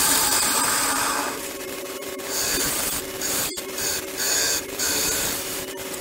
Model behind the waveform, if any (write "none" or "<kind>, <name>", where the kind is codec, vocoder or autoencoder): vocoder, BigVGAN v2